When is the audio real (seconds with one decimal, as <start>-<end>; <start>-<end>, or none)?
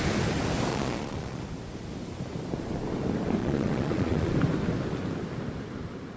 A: 0.0-0.7; 1.4-3.4; 4.3-6.2